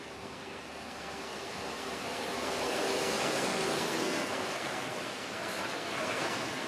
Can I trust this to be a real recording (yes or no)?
no